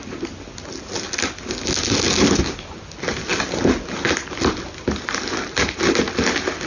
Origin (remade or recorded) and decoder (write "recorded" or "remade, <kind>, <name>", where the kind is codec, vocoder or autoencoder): recorded